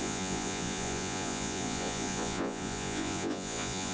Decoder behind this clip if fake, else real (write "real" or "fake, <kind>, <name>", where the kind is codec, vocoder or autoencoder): fake, vocoder, Vocos